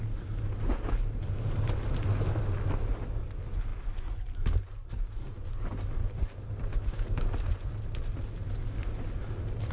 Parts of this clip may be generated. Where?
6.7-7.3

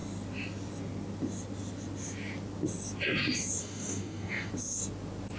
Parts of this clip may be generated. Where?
3.6-4.5

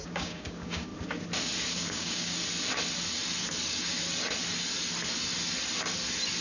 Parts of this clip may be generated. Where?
0.0-0.9; 1.7-2.4

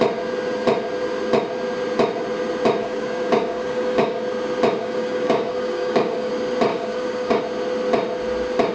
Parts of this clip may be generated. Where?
2.8-4.2; 4.8-6.3; 6.7-7.4

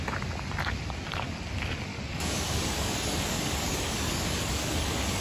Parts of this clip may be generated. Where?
1.9-5.2